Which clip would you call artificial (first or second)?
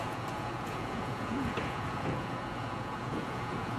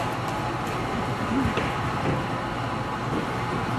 first